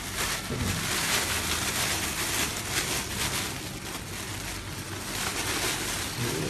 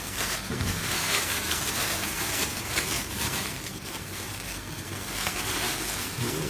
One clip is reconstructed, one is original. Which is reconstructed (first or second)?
second